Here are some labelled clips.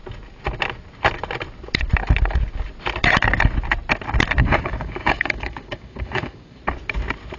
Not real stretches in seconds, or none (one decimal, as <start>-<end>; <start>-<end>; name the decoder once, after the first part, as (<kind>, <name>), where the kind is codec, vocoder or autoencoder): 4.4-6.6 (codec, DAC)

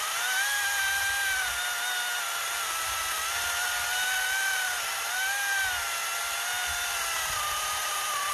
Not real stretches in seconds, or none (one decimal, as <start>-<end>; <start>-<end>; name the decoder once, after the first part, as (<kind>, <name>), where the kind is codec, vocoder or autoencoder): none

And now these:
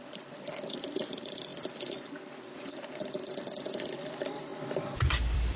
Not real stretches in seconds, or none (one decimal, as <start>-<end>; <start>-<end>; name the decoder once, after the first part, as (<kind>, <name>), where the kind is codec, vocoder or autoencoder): 0.0-4.5 (vocoder, BigVGAN v2); 5.1-5.6

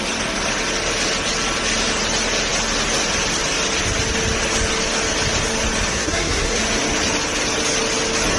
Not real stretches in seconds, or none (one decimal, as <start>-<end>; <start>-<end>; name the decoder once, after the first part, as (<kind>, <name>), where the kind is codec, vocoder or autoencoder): 5.9-6.6 (codec, SNAC)

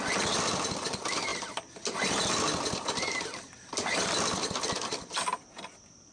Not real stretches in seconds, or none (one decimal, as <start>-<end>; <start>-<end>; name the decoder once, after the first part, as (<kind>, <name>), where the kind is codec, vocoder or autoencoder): none

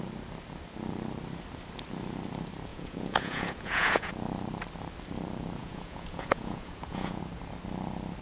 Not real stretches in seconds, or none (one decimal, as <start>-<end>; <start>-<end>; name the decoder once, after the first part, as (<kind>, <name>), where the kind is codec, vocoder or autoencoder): 2.7-4.1 (vocoder, Vocos); 5.6-7.2

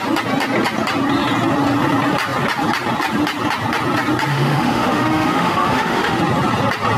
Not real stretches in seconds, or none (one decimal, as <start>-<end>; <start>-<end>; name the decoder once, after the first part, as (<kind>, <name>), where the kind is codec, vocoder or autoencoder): 4.3-6.2 (autoencoder, DAC-VAE)

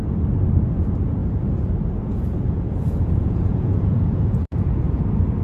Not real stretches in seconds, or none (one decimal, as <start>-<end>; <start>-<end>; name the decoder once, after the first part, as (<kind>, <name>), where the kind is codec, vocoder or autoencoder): 1.2-1.7 (vocoder, Vocos); 2.1-5.0